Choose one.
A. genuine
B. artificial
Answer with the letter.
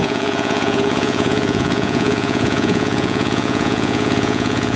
B